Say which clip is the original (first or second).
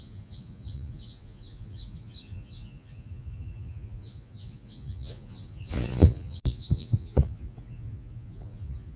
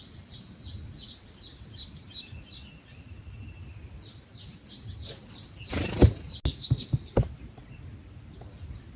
second